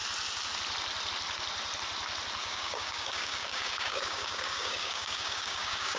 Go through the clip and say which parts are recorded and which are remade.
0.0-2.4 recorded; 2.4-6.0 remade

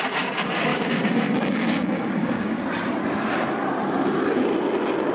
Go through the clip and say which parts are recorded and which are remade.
0.0-0.7 recorded; 0.7-2.6 remade; 2.6-5.1 recorded

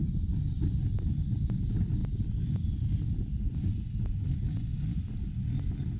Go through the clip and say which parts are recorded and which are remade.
0.0-6.0 recorded

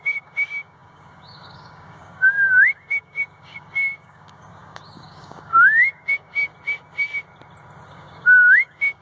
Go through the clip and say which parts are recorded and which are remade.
0.0-6.5 remade; 6.5-7.9 recorded; 7.9-9.0 remade

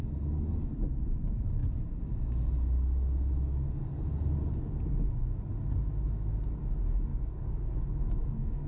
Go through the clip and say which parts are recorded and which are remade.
0.0-7.1 recorded; 7.1-8.7 remade